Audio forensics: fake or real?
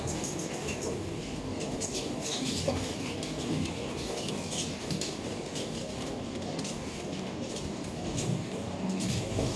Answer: fake